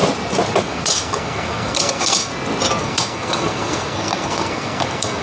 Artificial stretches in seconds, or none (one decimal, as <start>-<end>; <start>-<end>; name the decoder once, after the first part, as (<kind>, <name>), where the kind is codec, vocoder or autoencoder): 0.6-2.3 (codec, SNAC); 2.8-5.2